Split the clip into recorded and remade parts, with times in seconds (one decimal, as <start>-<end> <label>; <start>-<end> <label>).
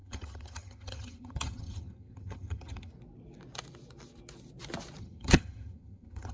0.0-2.9 remade; 2.9-5.0 recorded; 5.0-6.3 remade